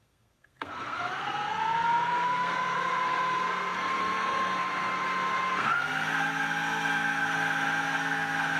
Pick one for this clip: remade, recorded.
remade